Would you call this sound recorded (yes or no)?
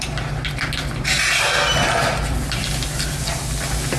yes